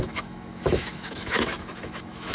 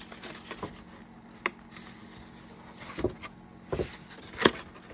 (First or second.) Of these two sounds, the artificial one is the first